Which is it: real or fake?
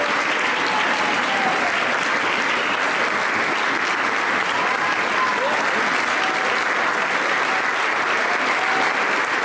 real